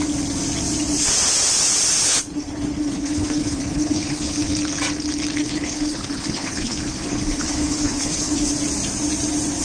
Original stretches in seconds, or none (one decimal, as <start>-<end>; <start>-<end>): 0.0-2.1; 4.5-5.4; 8.5-9.6